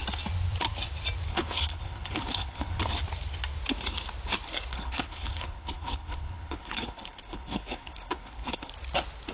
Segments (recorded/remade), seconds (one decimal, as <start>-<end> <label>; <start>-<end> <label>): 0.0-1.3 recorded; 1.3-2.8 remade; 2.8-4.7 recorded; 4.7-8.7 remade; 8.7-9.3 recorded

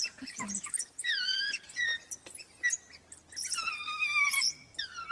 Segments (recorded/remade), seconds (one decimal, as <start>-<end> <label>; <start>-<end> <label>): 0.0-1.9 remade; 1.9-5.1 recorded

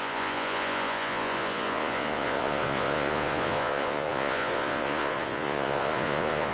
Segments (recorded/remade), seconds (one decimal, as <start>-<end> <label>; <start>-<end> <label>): 0.0-6.5 remade